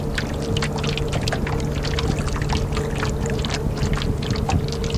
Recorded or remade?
recorded